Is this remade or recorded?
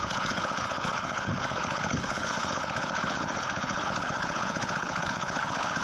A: remade